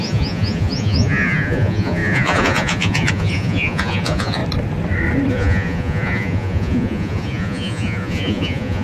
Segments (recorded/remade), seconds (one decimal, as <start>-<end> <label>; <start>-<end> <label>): 0.0-4.4 remade; 4.4-5.3 recorded; 5.3-8.8 remade